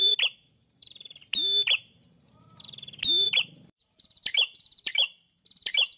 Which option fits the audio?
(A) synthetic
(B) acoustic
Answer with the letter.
A